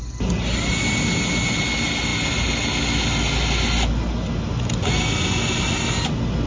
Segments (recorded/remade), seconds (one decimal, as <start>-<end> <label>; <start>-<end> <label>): 0.0-6.5 recorded

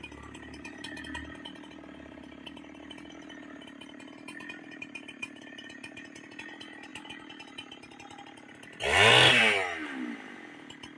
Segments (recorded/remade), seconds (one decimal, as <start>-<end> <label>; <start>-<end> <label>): 0.0-11.0 recorded

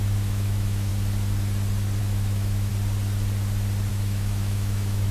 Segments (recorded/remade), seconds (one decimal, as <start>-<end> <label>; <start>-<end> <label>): 0.0-0.9 remade; 0.9-2.0 recorded; 2.0-2.7 remade; 2.7-3.9 recorded; 3.9-5.1 remade

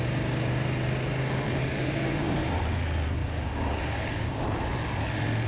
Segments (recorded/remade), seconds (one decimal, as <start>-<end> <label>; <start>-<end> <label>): 0.0-1.6 recorded; 1.6-2.6 remade; 2.6-3.2 recorded; 3.2-4.4 remade; 4.4-5.5 recorded

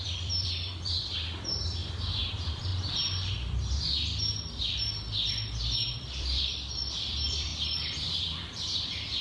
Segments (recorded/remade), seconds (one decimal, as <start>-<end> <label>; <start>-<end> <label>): 0.0-1.8 remade; 1.8-2.3 recorded; 2.3-2.7 remade; 2.7-5.3 recorded; 5.3-9.2 remade

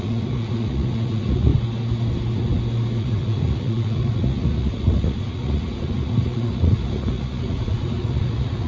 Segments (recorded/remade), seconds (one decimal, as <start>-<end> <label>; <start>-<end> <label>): 0.0-1.5 remade; 1.5-3.0 recorded; 3.0-8.7 remade

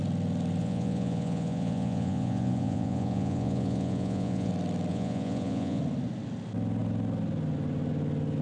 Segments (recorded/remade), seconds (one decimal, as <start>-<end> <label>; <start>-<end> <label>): 0.0-0.6 recorded; 0.6-4.5 remade; 4.5-4.9 recorded; 4.9-5.8 remade; 5.8-8.4 recorded